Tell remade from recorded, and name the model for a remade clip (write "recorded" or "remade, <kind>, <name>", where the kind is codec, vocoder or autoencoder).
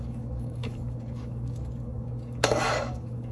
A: remade, codec, DAC